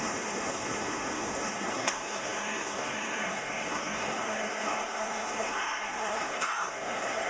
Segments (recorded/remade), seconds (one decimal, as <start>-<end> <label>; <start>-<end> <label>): 0.0-7.3 remade

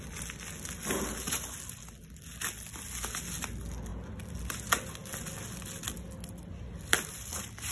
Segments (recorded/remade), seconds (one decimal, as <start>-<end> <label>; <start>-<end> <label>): 0.0-7.7 recorded

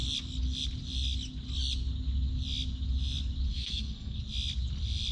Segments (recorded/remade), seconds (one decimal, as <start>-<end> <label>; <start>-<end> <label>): 0.0-3.5 recorded; 3.5-4.2 remade; 4.2-5.1 recorded

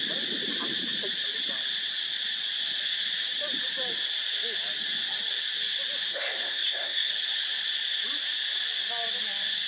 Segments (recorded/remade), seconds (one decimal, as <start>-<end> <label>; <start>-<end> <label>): 0.0-6.1 recorded; 6.1-7.1 remade; 7.1-9.7 recorded